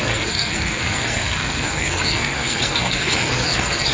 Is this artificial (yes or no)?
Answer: yes